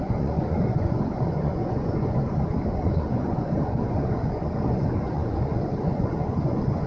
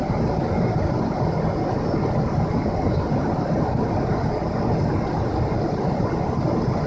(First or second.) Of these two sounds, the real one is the second